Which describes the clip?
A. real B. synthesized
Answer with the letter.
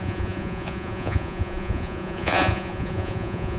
B